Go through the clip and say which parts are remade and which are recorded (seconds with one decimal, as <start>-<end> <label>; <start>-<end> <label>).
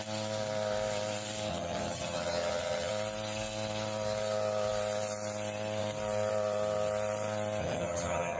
0.0-1.5 recorded; 1.5-2.9 remade; 2.9-7.6 recorded; 7.6-8.4 remade